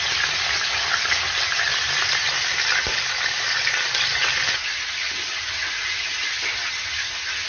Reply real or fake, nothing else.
real